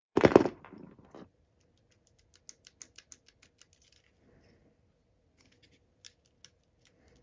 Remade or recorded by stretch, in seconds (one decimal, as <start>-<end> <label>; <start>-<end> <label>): 0.0-0.6 remade; 0.6-7.2 recorded